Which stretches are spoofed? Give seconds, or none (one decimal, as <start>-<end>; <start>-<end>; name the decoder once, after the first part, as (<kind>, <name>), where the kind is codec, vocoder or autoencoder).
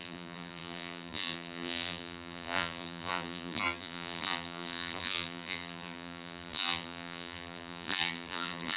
0.0-8.8 (vocoder, BigVGAN v2)